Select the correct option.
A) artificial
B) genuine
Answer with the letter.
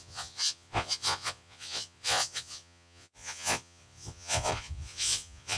A